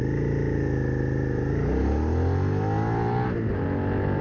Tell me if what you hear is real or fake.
real